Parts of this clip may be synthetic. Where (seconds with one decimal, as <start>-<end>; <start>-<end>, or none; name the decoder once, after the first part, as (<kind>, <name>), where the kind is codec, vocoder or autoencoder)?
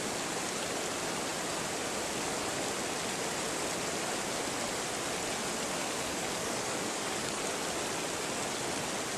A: 5.8-7.4 (codec, DAC)